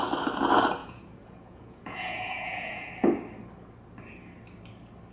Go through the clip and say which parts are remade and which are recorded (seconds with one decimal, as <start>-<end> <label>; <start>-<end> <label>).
0.0-0.8 recorded; 0.8-2.9 remade; 2.9-5.1 recorded